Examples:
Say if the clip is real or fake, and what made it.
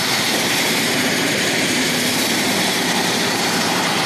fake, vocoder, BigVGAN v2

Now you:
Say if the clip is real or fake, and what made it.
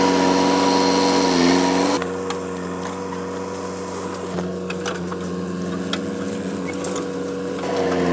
real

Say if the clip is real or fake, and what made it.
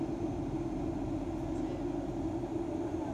real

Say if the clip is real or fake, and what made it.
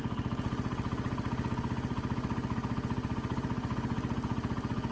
real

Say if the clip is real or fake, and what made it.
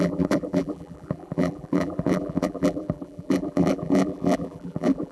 fake, vocoder, BigVGAN v2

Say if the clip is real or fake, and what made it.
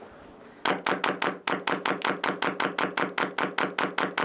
real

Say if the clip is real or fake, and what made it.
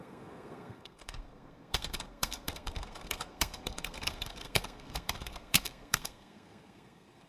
fake, codec, SNAC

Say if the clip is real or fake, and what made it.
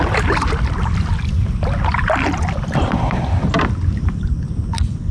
real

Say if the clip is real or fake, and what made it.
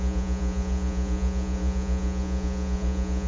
fake, vocoder, Vocos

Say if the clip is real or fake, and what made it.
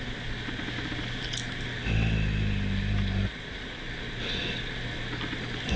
real